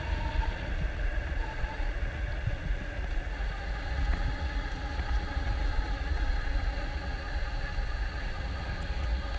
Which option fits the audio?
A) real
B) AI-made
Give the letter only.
B